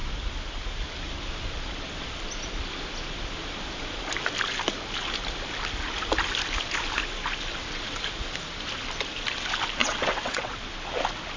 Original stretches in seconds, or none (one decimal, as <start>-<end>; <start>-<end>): 0.0-7.5; 8.0-9.8; 10.6-11.4